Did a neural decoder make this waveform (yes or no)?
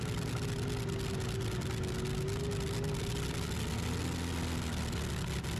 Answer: no